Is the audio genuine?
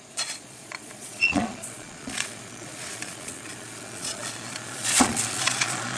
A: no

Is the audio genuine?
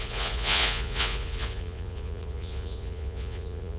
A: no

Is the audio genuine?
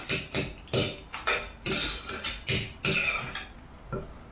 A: yes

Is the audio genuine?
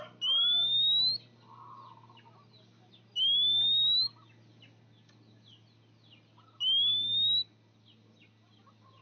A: yes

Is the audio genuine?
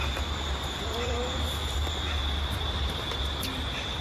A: no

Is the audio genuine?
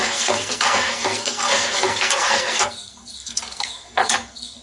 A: no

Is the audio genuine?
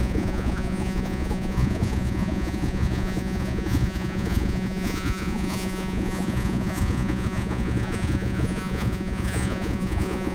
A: no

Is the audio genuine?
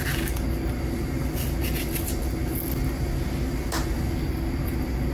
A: yes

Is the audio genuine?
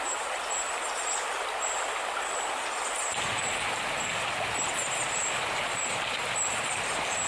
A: yes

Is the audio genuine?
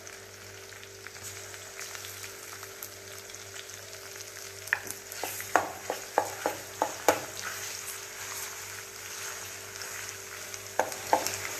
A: yes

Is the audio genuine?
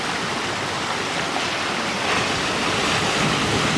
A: yes